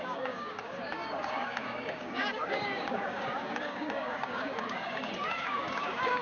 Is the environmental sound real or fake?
fake